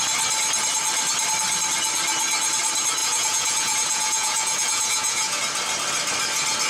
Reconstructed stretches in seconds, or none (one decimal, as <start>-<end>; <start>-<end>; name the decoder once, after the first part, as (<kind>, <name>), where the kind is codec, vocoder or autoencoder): 3.0-5.4 (vocoder, Vocos)